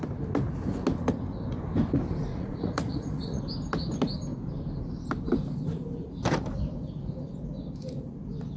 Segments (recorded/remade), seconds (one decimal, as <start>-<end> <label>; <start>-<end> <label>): 0.0-2.3 recorded; 2.3-3.4 remade; 3.4-8.6 recorded